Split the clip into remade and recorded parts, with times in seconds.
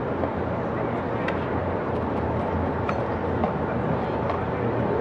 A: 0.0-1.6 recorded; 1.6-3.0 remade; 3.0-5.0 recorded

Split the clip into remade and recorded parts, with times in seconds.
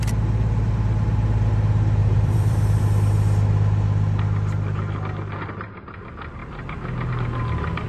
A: 0.0-2.0 recorded; 2.0-2.8 remade; 2.8-7.9 recorded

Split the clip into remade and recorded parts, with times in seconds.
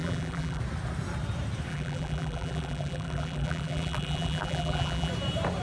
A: 0.0-0.6 remade; 0.6-1.7 recorded; 1.7-5.1 remade; 5.1-5.6 recorded